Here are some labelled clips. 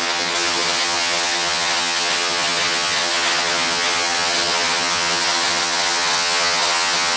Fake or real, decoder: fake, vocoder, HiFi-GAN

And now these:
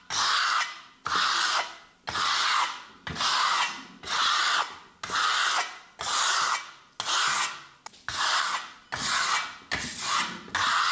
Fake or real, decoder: real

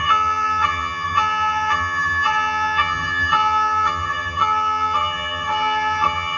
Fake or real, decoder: fake, vocoder, HiFi-GAN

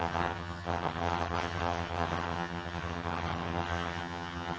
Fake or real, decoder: fake, vocoder, HiFi-GAN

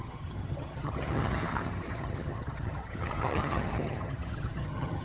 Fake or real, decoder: fake, vocoder, HiFi-GAN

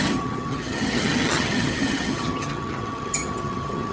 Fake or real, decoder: fake, vocoder, HiFi-GAN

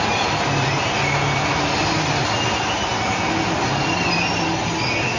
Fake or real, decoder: real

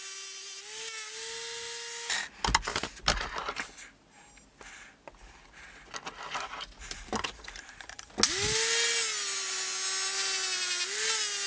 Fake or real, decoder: real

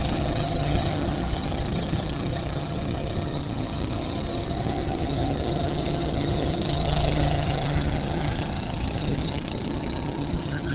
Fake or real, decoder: fake, vocoder, HiFi-GAN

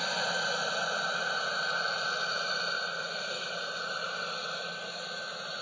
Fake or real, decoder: real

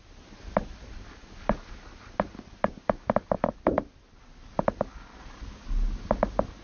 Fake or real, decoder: real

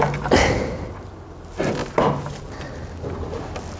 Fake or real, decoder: real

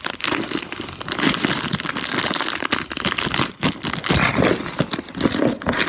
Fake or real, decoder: real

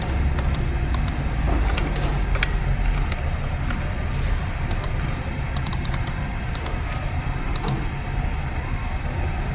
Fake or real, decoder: real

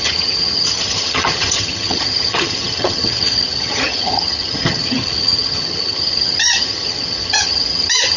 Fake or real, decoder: fake, vocoder, HiFi-GAN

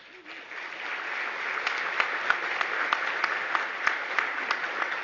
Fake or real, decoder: real